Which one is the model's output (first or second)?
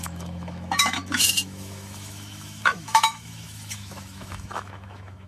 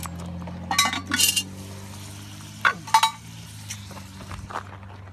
first